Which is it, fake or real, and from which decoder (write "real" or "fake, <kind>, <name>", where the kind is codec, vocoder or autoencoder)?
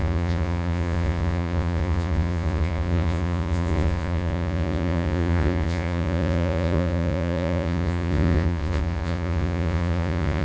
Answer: fake, vocoder, Vocos